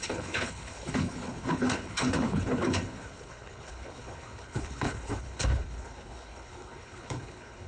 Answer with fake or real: fake